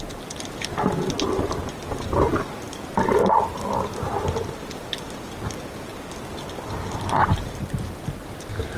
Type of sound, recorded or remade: recorded